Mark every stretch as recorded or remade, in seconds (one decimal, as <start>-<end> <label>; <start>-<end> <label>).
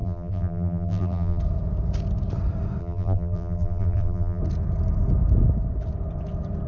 0.0-1.4 remade; 1.4-2.8 recorded; 2.8-4.4 remade; 4.4-6.7 recorded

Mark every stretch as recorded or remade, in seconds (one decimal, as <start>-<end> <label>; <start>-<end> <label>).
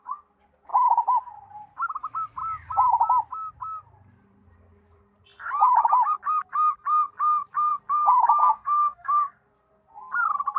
0.0-8.4 recorded; 8.4-9.2 remade; 9.2-10.6 recorded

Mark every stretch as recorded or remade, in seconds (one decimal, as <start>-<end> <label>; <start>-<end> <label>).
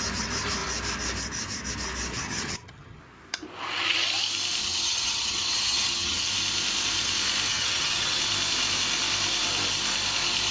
0.0-2.1 recorded; 2.1-3.0 remade; 3.0-4.6 recorded; 4.6-6.3 remade; 6.3-7.5 recorded; 7.5-8.2 remade; 8.2-10.5 recorded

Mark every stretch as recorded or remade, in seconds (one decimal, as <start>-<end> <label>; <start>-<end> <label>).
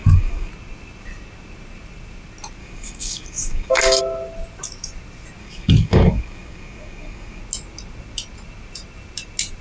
0.0-0.5 remade; 0.5-2.6 recorded; 2.6-4.0 remade; 4.0-5.4 recorded; 5.4-7.4 remade; 7.4-9.6 recorded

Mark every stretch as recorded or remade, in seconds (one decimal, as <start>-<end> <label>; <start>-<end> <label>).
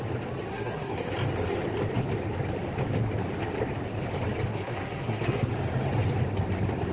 0.0-0.5 recorded; 0.5-1.1 remade; 1.1-4.5 recorded; 4.5-5.5 remade; 5.5-6.9 recorded